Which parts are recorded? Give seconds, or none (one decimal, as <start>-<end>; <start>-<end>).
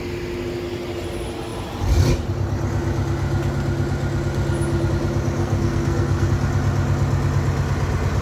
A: 0.0-5.4; 6.3-8.2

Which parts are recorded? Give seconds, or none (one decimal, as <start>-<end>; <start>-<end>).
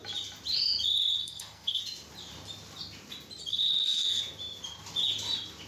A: 0.0-1.2; 1.8-3.5; 4.2-5.7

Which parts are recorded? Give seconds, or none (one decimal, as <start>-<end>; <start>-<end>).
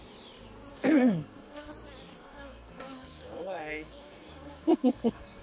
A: 0.0-0.7; 1.7-2.1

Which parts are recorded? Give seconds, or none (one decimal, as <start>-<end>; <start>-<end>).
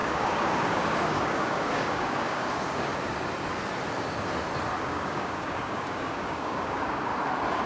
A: 2.9-4.8; 7.1-7.7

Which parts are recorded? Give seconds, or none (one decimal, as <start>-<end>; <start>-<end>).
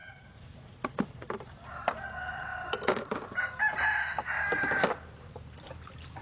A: 1.3-6.2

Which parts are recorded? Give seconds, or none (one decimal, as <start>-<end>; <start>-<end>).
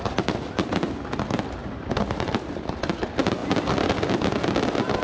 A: 0.0-1.6; 2.3-5.0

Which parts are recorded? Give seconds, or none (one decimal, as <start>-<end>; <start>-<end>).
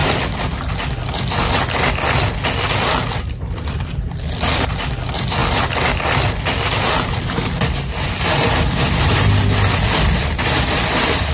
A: 0.0-3.2